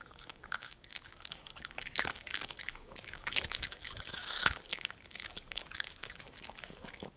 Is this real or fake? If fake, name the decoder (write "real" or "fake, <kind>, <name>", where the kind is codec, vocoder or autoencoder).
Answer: fake, codec, DAC